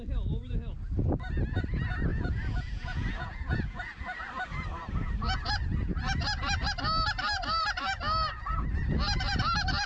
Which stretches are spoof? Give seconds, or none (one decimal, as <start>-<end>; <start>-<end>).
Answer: 2.1-3.8